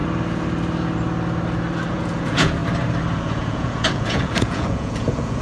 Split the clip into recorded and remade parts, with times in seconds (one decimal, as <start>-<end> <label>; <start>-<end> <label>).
0.0-1.9 recorded; 1.9-2.6 remade; 2.6-3.2 recorded; 3.2-5.4 remade